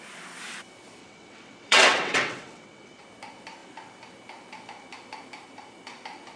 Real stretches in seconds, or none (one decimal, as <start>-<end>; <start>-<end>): 0.0-1.0; 3.0-6.4